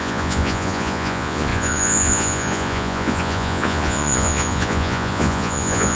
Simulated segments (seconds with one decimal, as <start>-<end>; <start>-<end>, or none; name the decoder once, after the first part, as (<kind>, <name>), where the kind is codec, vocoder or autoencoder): 0.0-6.0 (vocoder, Vocos)